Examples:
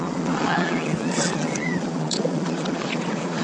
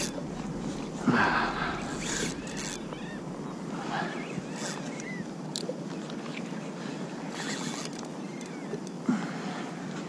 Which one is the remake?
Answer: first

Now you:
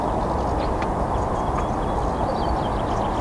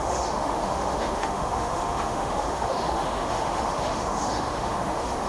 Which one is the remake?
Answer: second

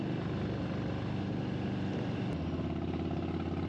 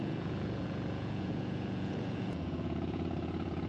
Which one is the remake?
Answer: second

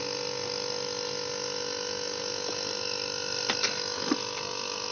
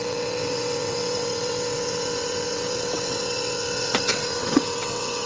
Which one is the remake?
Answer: second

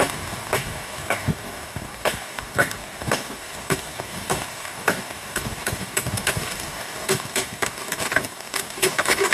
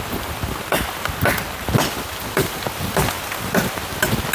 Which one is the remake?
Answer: first